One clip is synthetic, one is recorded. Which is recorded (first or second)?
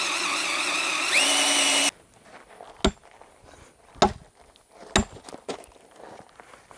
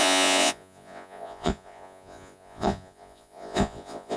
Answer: first